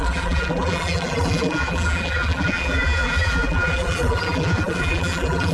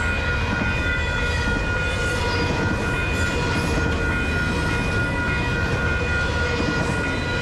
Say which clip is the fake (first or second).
first